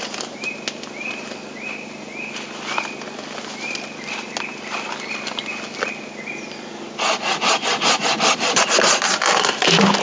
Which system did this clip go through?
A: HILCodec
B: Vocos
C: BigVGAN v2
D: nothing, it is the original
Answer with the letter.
D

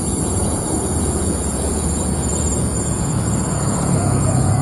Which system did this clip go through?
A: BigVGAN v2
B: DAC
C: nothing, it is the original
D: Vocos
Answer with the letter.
D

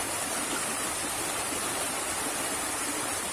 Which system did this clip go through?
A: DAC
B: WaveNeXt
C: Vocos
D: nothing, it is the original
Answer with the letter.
D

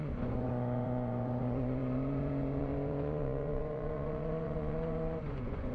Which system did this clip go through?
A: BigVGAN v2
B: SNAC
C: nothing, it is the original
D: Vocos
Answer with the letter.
D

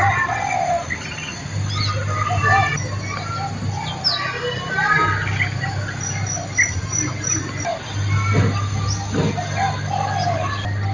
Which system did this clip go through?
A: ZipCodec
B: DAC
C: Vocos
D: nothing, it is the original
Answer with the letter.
D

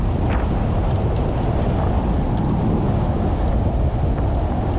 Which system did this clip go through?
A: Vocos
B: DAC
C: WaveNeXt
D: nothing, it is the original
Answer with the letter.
D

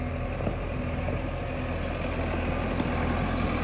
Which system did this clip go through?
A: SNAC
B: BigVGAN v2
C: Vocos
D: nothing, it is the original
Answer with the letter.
D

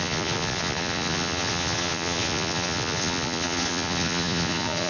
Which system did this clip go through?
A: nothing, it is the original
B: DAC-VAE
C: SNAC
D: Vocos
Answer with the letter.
D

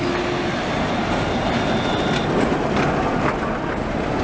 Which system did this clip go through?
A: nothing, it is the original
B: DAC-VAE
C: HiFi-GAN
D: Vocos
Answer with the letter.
A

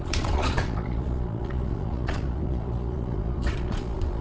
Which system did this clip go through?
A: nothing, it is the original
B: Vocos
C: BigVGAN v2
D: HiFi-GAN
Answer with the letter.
B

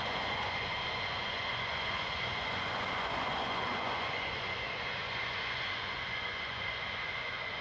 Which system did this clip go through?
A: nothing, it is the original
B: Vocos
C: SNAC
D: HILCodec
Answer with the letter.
B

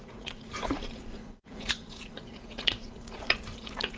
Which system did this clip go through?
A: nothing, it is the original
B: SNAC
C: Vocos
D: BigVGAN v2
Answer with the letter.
C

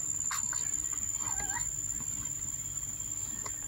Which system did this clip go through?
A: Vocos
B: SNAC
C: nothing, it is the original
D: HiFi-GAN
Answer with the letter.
C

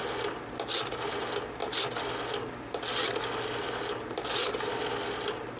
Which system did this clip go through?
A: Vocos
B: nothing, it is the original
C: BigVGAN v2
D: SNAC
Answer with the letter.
B